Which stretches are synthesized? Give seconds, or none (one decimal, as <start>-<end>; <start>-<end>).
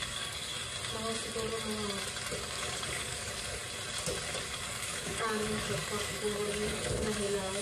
0.0-0.5; 2.4-3.6; 4.4-7.6